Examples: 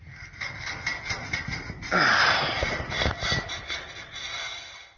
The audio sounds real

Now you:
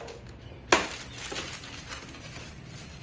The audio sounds real